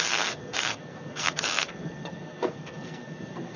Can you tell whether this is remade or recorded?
remade